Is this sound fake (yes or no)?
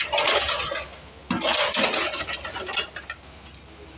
no